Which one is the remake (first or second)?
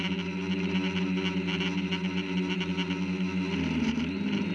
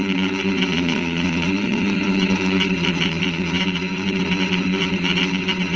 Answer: second